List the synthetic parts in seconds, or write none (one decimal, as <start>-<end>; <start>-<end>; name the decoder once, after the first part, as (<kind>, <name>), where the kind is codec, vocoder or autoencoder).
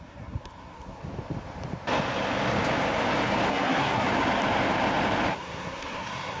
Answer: 0.0-1.0 (codec, SNAC); 3.5-4.1; 5.3-6.4